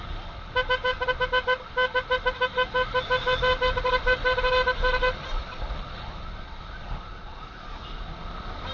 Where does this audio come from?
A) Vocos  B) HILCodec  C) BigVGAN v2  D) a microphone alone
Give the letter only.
D